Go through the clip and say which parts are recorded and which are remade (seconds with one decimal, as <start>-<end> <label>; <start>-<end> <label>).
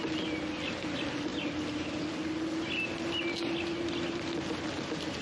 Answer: 0.0-5.2 recorded